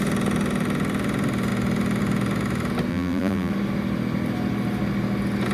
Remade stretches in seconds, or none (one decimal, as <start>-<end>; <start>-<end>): 2.9-3.5